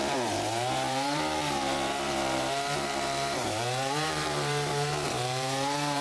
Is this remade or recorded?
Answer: remade